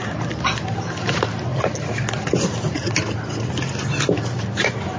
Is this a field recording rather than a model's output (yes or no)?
yes